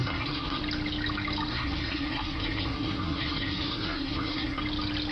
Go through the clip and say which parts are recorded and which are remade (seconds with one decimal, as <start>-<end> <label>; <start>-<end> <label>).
0.0-0.6 remade; 0.6-1.5 recorded; 1.5-4.6 remade; 4.6-5.1 recorded